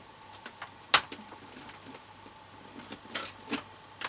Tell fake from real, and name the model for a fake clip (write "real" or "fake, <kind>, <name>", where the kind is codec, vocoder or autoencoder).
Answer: real